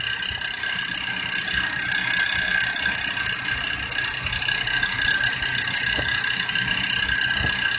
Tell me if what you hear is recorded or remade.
recorded